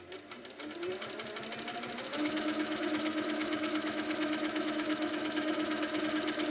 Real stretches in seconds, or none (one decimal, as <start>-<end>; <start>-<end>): 0.0-2.1; 6.0-6.5